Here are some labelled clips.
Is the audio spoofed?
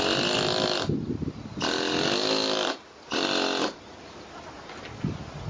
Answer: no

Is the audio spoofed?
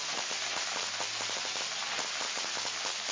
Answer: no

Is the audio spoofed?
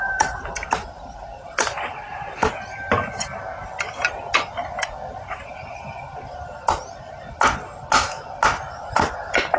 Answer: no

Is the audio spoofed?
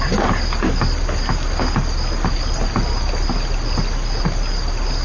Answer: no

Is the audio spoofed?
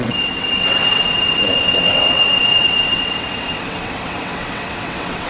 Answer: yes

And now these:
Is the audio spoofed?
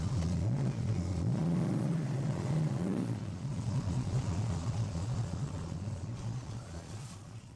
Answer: yes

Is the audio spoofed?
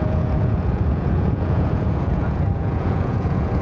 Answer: yes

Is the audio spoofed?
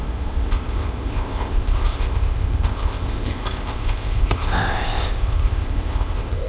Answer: yes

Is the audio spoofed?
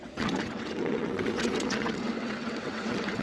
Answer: yes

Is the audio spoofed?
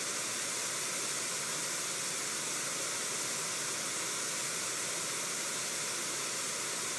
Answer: no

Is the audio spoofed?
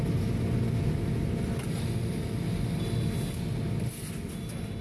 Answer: no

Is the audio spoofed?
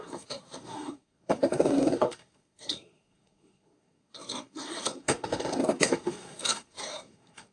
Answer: yes